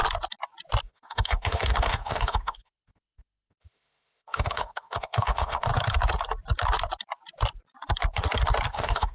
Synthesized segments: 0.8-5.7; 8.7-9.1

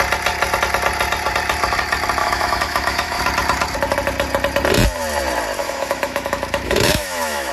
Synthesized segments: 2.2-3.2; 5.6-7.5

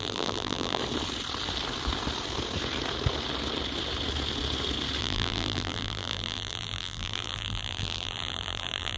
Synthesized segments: 0.0-0.8; 5.0-9.0

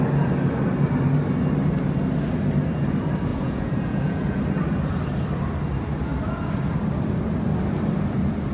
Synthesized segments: 3.3-4.4

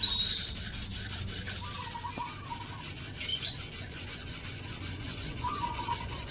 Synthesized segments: 3.3-6.3

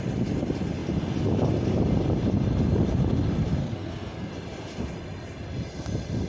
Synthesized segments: 3.6-4.3